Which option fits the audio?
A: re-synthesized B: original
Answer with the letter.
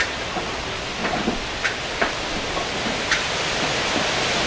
B